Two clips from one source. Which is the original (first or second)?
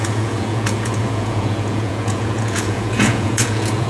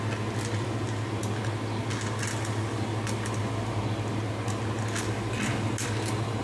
second